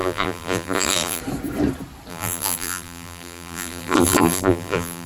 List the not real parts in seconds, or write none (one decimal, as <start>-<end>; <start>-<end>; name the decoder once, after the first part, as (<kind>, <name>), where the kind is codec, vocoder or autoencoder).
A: 0.0-1.2 (vocoder, BigVGAN v2); 2.1-5.1

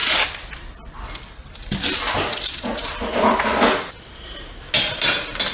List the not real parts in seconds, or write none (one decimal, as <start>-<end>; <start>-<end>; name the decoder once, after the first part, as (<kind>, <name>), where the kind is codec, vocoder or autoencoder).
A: 0.0-2.1 (vocoder, BigVGAN v2)

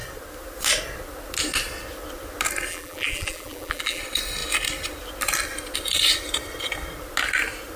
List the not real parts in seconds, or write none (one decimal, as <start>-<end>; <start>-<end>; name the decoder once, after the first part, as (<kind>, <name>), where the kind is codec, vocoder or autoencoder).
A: 2.7-4.0 (vocoder, BigVGAN v2)

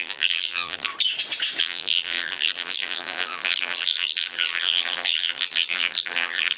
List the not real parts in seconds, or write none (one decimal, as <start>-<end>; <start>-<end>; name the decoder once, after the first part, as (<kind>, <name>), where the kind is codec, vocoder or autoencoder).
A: 0.0-0.9 (vocoder, BigVGAN v2); 1.6-6.6

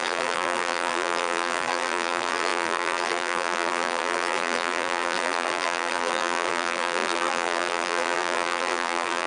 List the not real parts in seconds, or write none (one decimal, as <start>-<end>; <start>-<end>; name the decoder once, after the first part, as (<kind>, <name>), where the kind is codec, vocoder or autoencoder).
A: 0.0-9.3 (vocoder, BigVGAN v2)

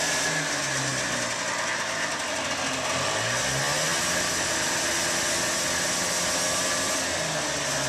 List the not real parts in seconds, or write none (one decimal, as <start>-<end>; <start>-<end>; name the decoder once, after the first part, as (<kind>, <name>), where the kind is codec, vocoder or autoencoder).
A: 3.9-4.8 (vocoder, BigVGAN v2)

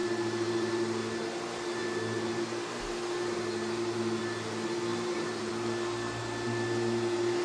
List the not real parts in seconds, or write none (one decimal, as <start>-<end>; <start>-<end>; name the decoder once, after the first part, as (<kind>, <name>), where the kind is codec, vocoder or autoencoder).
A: 0.0-0.7 (vocoder, BigVGAN v2); 4.9-5.5

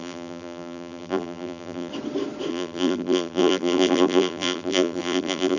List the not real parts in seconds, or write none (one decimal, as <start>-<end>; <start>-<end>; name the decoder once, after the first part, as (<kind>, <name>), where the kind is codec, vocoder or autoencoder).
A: 0.0-1.9 (vocoder, BigVGAN v2); 2.5-5.6